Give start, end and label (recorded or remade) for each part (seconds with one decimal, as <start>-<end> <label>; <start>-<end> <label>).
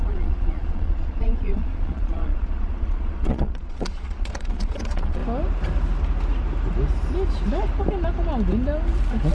0.0-5.2 remade; 5.2-9.3 recorded